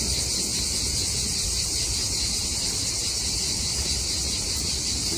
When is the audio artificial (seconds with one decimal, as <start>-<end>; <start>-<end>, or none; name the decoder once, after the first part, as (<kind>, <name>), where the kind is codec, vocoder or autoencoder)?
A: 4.2-5.2 (vocoder, BigVGAN v2)